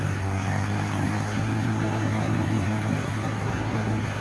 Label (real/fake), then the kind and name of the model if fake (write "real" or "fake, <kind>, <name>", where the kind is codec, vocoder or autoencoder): fake, codec, SNAC